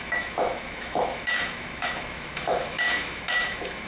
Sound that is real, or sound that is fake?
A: fake